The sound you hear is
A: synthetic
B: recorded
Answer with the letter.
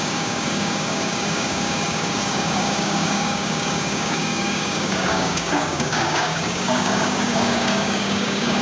A